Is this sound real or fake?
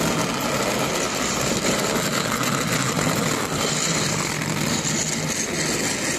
real